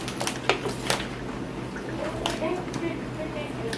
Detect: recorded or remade recorded